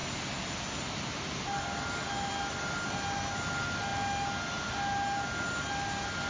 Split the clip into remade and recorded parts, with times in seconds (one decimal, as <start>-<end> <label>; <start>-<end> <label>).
0.0-6.3 recorded